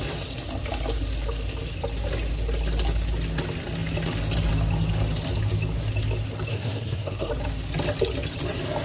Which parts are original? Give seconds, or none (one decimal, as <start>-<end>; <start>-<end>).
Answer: 0.0-6.5; 7.3-8.8